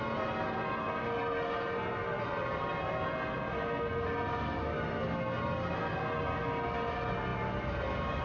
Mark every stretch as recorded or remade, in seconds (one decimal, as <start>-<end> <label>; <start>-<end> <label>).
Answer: 0.0-8.2 recorded